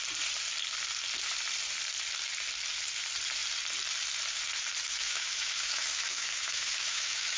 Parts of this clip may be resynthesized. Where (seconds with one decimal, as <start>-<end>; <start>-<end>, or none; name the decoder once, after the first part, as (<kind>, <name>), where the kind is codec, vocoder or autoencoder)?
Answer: 4.9-7.4 (autoencoder, DAC-VAE)